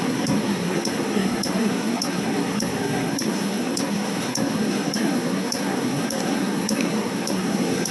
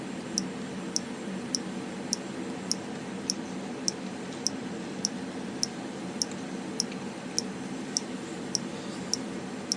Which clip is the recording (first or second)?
second